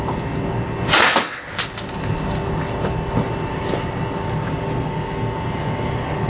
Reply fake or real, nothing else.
real